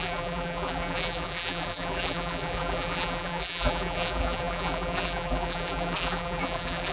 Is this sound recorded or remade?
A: remade